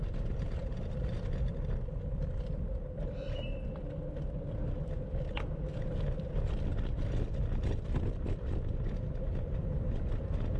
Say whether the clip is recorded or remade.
recorded